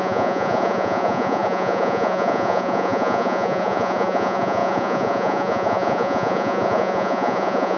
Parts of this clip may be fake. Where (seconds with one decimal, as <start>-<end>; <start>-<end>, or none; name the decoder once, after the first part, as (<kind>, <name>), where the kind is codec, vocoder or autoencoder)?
0.0-7.8 (vocoder, Vocos)

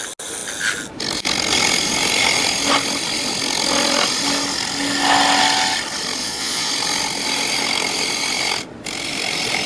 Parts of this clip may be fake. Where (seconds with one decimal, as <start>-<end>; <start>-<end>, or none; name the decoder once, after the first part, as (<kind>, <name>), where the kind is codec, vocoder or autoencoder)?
6.2-6.7 (vocoder, Vocos)

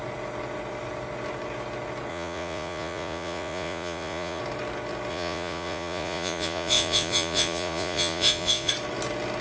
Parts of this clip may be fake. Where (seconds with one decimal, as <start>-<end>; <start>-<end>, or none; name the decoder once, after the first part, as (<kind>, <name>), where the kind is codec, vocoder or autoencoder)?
2.1-4.4 (vocoder, Vocos); 5.1-8.7